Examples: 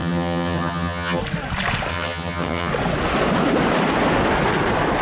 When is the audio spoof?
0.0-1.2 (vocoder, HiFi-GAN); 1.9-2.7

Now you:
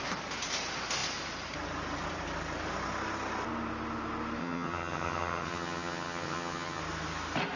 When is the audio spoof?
4.4-6.8 (vocoder, HiFi-GAN)